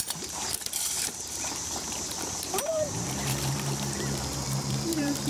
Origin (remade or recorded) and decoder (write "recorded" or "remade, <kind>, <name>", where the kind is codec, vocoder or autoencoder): remade, vocoder, BigVGAN v2